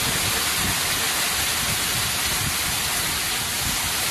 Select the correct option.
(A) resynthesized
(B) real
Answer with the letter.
B